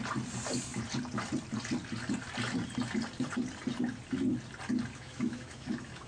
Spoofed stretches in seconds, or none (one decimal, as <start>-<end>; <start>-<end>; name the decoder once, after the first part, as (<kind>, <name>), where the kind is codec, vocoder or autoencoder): 4.9-6.1 (autoencoder, DAC-VAE)